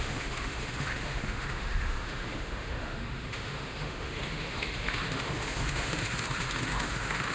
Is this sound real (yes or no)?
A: no